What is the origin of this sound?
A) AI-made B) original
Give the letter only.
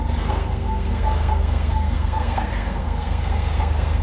A